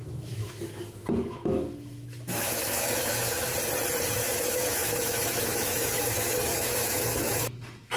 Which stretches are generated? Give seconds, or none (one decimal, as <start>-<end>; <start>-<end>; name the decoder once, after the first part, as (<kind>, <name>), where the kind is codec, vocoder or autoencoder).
0.0-3.5 (autoencoder, DAC-VAE); 4.1-8.0